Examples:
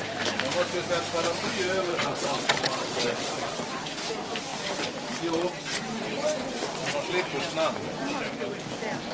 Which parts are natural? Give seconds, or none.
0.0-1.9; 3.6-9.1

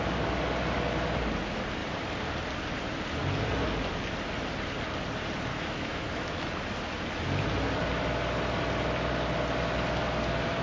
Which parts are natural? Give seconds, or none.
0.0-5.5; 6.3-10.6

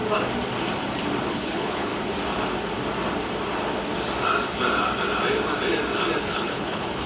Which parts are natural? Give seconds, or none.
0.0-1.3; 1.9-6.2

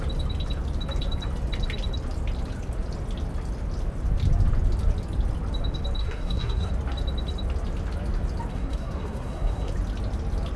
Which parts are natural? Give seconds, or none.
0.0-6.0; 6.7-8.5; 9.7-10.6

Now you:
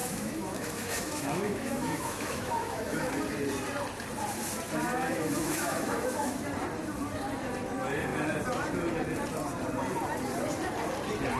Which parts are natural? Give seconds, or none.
3.1-4.9; 6.4-11.4

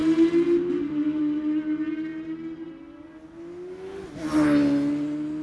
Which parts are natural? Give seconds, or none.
0.0-5.4